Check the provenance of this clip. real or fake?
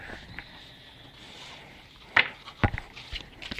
real